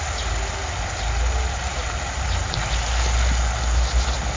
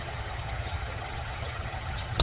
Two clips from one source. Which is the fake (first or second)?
second